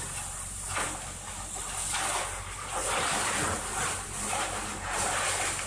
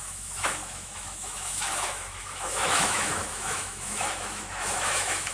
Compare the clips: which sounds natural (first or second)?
first